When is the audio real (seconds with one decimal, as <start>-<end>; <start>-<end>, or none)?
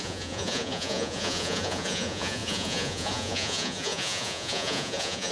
none